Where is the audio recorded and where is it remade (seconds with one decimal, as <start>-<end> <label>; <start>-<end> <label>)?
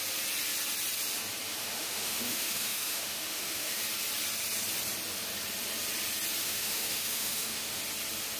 0.0-1.6 recorded; 1.6-3.8 remade; 3.8-6.4 recorded; 6.4-7.8 remade; 7.8-8.4 recorded